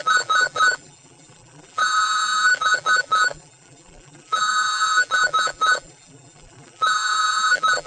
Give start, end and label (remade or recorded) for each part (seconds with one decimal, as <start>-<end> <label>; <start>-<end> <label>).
0.0-7.9 remade